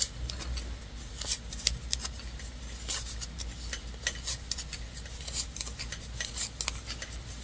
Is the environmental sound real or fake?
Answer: real